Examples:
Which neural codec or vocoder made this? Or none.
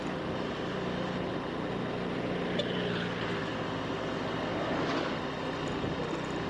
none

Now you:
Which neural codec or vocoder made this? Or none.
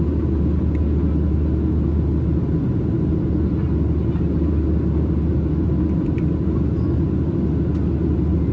none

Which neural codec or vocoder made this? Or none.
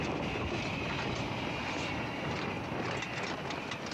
none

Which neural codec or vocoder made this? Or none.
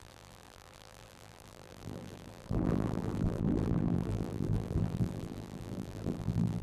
vocoder, BigVGAN v2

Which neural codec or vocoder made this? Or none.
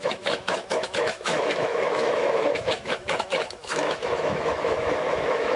autoencoder, DAC-VAE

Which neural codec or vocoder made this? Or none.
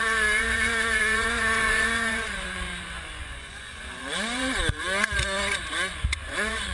vocoder, Vocos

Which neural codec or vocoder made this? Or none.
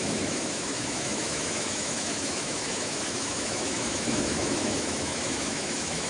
autoencoder, DAC-VAE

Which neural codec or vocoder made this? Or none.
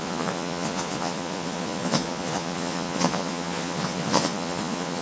vocoder, Vocos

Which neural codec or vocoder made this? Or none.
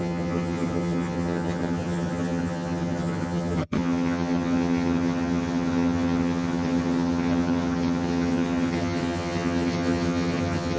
vocoder, HiFi-GAN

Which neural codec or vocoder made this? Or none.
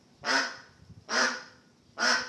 none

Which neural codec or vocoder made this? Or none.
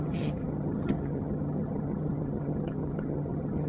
vocoder, HiFi-GAN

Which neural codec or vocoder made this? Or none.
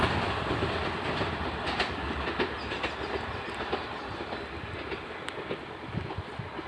none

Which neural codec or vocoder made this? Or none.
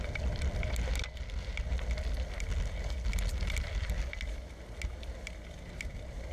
none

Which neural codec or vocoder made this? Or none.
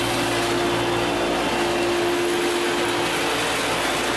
none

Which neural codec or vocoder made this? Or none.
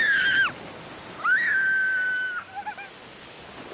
none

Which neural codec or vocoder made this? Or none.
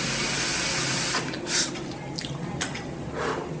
none